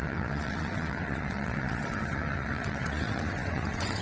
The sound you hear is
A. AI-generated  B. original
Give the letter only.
A